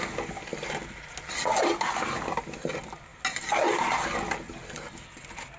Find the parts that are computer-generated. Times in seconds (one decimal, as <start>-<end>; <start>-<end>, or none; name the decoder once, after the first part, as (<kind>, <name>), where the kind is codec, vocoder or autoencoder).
none